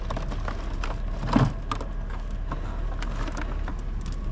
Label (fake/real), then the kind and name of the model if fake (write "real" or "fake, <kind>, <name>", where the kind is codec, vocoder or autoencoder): real